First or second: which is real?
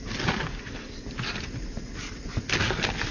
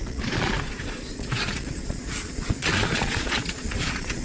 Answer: first